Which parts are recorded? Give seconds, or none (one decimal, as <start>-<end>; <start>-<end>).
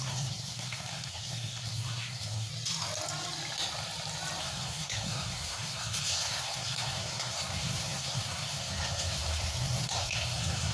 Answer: 2.5-4.4